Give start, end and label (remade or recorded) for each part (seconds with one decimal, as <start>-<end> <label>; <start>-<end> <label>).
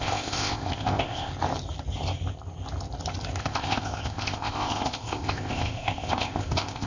0.0-1.3 remade; 1.3-3.4 recorded; 3.4-6.9 remade